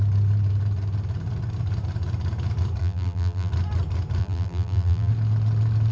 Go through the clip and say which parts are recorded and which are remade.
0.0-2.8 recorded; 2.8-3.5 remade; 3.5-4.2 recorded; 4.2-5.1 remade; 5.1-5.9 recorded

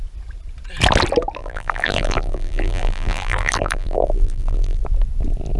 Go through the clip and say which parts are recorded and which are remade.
0.0-1.4 recorded; 1.4-4.8 remade; 4.8-5.6 recorded

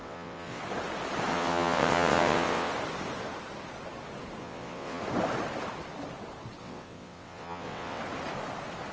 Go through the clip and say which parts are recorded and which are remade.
0.0-0.6 remade; 0.6-1.3 recorded; 1.3-2.7 remade; 2.7-4.4 recorded; 4.4-5.0 remade; 5.0-6.6 recorded; 6.6-8.0 remade; 8.0-8.9 recorded

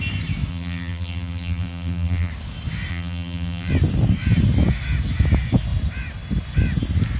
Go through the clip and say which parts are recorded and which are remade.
0.0-0.5 recorded; 0.5-2.3 remade; 2.3-2.9 recorded; 2.9-3.7 remade; 3.7-7.2 recorded

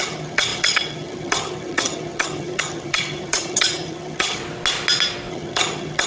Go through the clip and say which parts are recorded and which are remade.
0.0-4.4 remade; 4.4-5.3 recorded; 5.3-6.1 remade